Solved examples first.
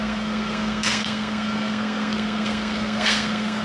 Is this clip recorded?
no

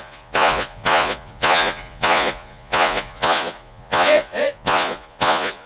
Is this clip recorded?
no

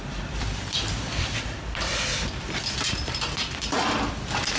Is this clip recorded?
no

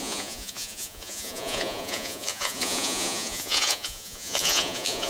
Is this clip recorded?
no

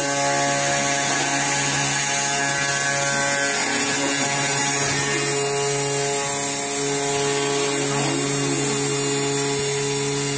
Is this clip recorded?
yes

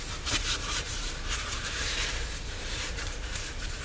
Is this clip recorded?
no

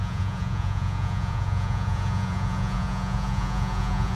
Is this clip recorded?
no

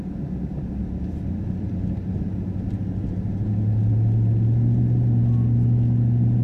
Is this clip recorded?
yes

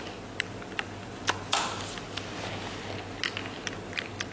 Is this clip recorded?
yes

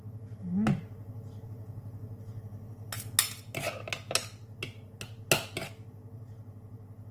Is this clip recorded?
yes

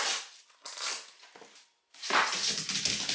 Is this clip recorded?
yes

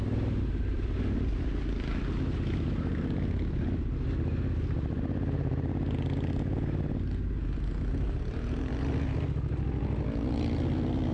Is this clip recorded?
yes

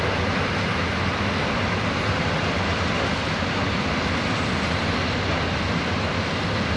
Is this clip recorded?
yes